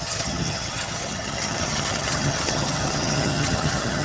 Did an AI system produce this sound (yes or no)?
yes